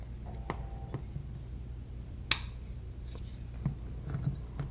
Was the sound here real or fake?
real